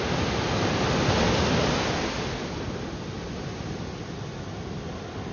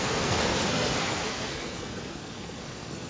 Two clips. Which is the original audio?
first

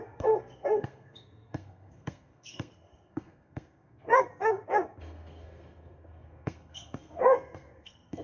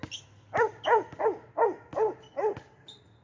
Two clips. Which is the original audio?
second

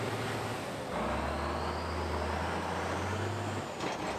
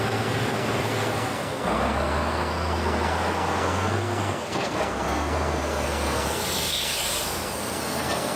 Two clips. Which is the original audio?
first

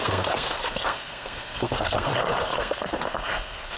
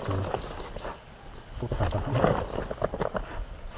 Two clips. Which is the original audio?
second